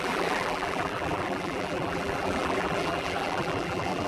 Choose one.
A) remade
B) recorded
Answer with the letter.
A